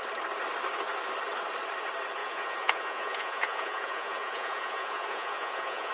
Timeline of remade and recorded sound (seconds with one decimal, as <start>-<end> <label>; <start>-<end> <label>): 0.0-2.2 recorded; 2.2-5.9 remade